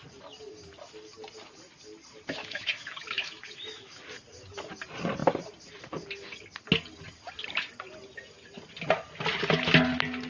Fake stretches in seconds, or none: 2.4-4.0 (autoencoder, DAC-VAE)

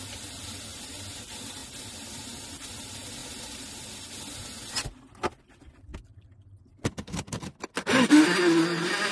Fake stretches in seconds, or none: none

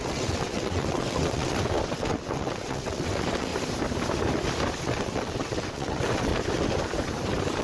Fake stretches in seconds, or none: 0.0-3.5 (vocoder, WaveNeXt); 4.8-6.3

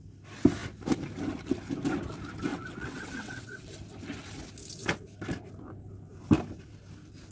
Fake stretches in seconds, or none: 2.5-3.7 (vocoder, WaveNeXt)

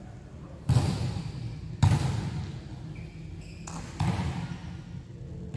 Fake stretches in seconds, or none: none